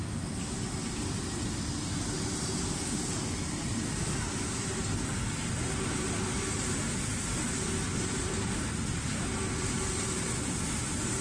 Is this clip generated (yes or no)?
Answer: no